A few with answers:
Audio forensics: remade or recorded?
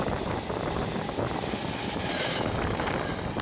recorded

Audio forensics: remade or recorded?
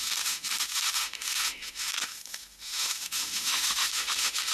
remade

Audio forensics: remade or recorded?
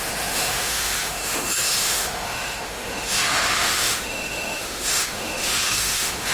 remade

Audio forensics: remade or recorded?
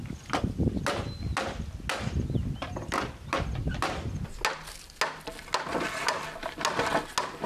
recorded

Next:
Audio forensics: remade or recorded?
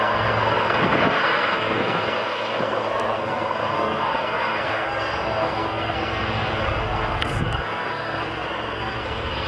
remade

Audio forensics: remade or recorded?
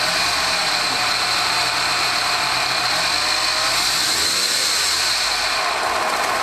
recorded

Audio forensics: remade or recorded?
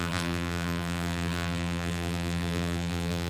remade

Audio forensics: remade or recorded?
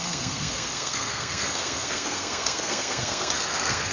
remade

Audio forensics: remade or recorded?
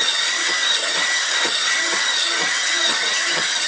remade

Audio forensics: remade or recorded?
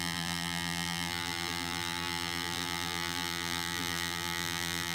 remade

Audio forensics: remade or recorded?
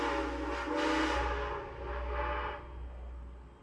recorded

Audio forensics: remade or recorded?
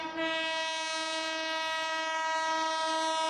recorded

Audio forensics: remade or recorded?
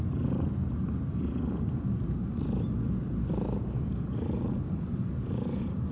recorded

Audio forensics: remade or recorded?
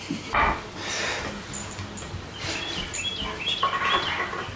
recorded